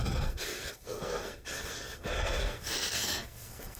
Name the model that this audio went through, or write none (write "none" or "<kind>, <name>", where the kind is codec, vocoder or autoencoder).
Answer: codec, SNAC